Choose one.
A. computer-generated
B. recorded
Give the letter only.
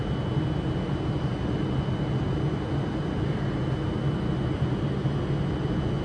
B